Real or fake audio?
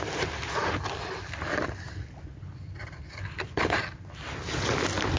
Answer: fake